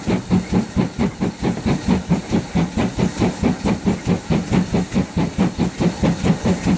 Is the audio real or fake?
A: real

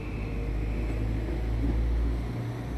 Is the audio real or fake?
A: real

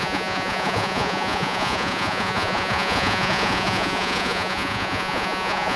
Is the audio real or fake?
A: fake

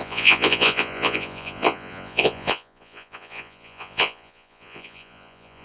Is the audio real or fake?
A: fake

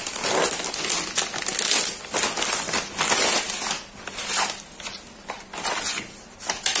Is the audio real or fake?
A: real